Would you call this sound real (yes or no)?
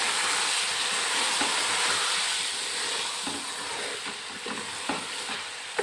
yes